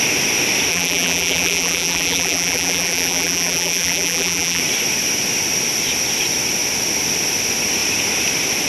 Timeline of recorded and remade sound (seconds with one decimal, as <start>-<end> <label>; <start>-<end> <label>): 0.0-0.7 recorded; 0.7-4.6 remade; 4.6-8.7 recorded